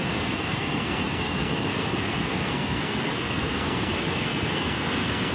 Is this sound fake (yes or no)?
yes